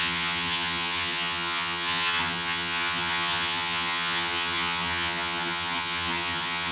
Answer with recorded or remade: remade